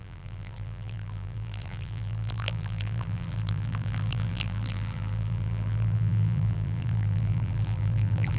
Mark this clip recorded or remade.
remade